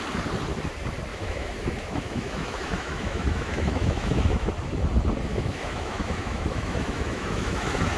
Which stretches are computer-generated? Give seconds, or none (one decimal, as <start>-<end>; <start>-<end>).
1.1-4.5; 5.3-8.0